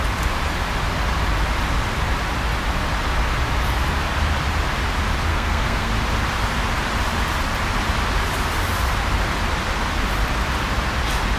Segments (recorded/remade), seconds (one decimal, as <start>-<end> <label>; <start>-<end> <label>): 0.0-5.3 recorded; 5.3-5.9 remade; 5.9-11.4 recorded